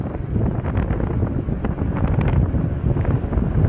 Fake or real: real